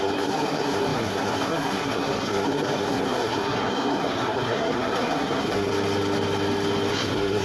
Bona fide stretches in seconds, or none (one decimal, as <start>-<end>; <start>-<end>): 5.7-6.9